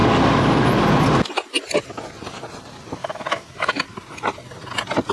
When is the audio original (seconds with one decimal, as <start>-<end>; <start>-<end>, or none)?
0.0-3.0; 3.8-5.1